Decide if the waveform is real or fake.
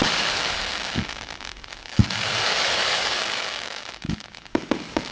fake